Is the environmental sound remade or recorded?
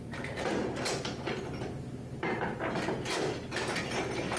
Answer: remade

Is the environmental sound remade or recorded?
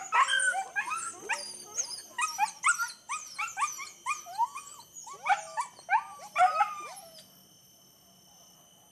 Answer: recorded